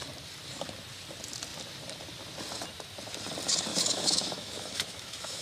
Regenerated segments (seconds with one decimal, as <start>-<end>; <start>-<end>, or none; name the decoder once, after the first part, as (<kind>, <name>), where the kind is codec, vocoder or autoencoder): 3.7-5.4 (autoencoder, DAC-VAE)